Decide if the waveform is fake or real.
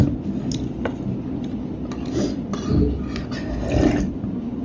real